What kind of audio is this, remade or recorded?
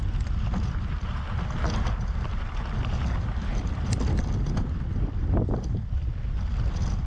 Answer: recorded